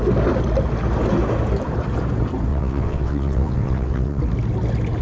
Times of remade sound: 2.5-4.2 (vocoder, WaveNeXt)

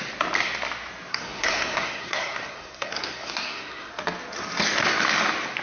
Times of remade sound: 1.1-3.9 (codec, SNAC)

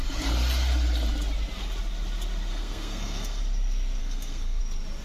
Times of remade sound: 2.5-3.4 (codec, SNAC); 4.0-4.6

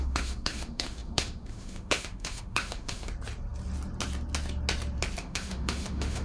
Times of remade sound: 0.0-3.1 (autoencoder, DAC-VAE); 5.2-6.2